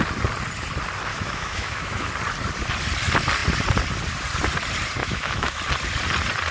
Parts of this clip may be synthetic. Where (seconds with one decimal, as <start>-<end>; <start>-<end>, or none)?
1.1-2.1; 5.0-5.6